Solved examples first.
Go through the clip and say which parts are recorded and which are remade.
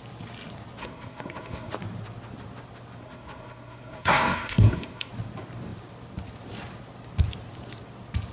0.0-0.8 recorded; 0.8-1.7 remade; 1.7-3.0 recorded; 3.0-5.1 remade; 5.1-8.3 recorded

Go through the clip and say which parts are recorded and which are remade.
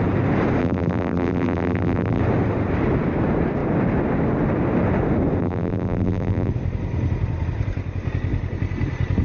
0.0-0.6 recorded; 0.6-2.2 remade; 2.2-5.4 recorded; 5.4-6.5 remade; 6.5-9.2 recorded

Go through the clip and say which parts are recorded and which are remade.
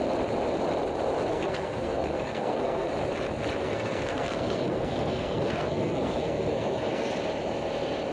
0.0-1.3 recorded; 1.3-2.9 remade; 2.9-3.6 recorded; 3.6-7.1 remade; 7.1-8.1 recorded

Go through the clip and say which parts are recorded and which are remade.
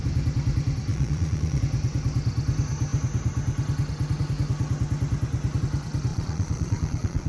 0.0-0.9 recorded; 0.9-1.6 remade; 1.6-6.1 recorded; 6.1-7.3 remade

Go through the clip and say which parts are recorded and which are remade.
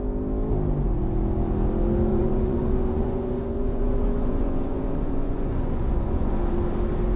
0.0-2.1 recorded; 2.1-6.4 remade; 6.4-7.2 recorded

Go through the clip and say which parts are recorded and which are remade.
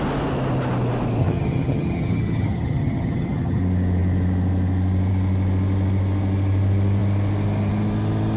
0.0-1.2 recorded; 1.2-3.6 remade; 3.6-8.4 recorded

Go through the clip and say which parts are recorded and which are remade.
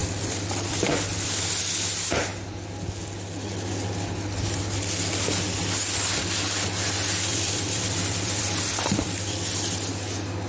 0.0-1.6 remade; 1.6-7.3 recorded; 7.3-9.9 remade; 9.9-10.5 recorded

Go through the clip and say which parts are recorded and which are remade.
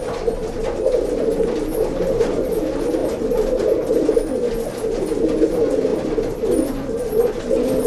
0.0-7.9 recorded